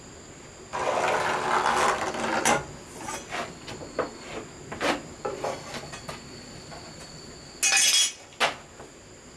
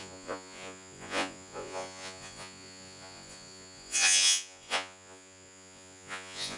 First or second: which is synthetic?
second